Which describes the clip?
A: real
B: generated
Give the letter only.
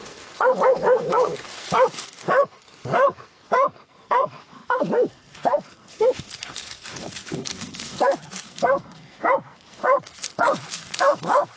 B